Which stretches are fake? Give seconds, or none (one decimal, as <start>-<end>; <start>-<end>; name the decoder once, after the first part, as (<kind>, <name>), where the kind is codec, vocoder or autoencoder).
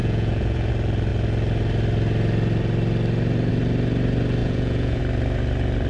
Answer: 0.0-0.7 (vocoder, Vocos); 4.4-5.0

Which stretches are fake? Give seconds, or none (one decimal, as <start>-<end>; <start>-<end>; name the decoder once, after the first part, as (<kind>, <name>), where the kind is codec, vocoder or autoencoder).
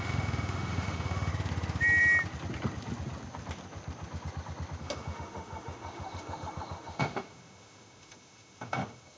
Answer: 0.0-1.3 (autoencoder, DAC-VAE); 4.8-9.2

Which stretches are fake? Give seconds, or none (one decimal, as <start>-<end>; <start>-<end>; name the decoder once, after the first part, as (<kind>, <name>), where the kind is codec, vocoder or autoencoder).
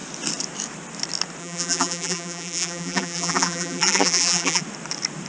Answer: 1.4-4.6 (vocoder, BigVGAN v2)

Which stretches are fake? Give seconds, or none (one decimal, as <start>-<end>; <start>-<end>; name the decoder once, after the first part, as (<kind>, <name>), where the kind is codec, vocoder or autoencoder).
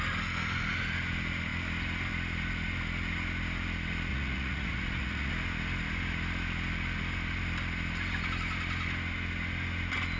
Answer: 4.1-5.3 (vocoder, Vocos)